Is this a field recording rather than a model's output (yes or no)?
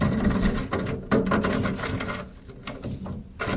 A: yes